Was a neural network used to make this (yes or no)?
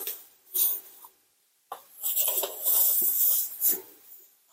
no